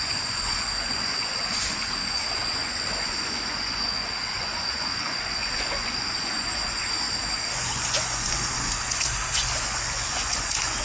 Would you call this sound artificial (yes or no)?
yes